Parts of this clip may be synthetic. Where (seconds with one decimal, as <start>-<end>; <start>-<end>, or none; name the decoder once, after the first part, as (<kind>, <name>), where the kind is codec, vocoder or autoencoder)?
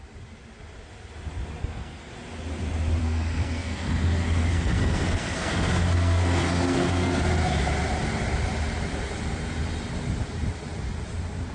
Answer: 1.6-2.1 (codec, SNAC); 3.0-7.2